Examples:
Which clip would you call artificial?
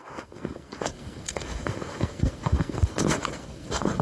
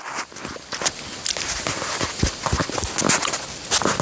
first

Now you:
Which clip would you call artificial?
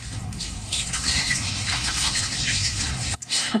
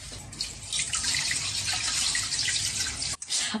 first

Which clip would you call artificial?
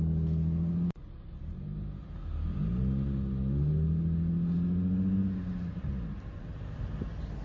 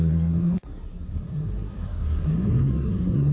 second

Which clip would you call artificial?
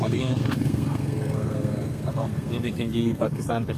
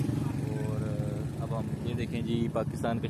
first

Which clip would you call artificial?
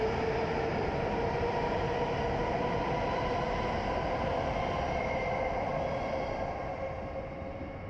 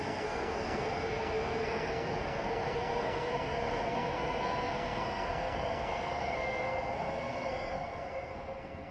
second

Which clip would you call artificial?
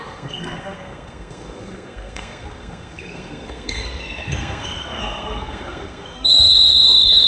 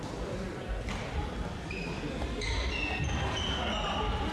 first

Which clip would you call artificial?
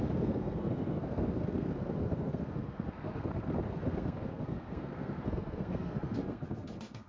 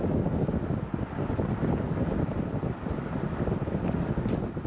first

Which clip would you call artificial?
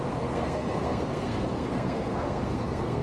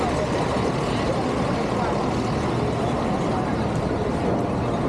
first